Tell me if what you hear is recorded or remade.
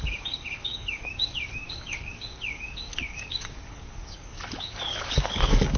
remade